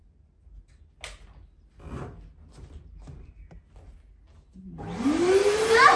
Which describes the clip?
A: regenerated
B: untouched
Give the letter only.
B